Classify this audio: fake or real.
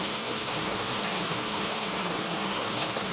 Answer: fake